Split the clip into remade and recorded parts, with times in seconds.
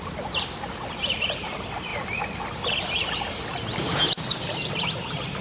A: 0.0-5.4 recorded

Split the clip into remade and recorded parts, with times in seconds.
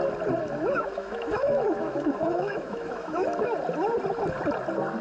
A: 0.0-0.4 recorded; 0.4-3.4 remade; 3.4-5.0 recorded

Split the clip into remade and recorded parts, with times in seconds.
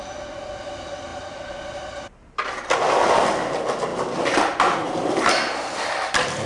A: 0.0-1.1 recorded; 1.1-1.8 remade; 1.8-3.9 recorded; 3.9-6.5 remade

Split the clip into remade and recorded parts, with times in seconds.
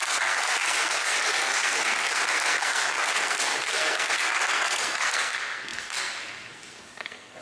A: 0.0-7.4 remade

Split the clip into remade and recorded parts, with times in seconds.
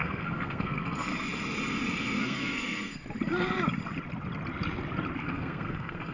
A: 0.0-1.1 remade; 1.1-2.2 recorded; 2.2-3.0 remade; 3.0-5.2 recorded; 5.2-6.1 remade